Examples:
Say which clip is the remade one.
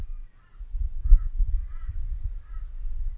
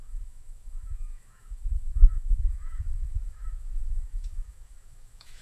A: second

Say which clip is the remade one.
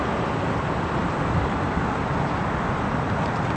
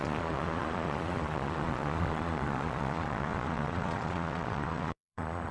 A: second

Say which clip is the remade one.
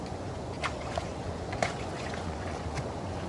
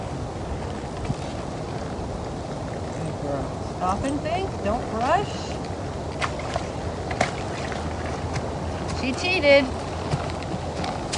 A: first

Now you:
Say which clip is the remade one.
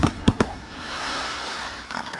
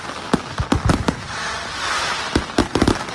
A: first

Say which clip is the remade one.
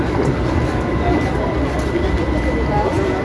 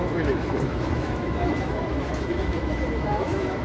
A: second